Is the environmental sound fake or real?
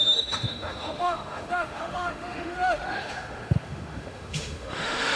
fake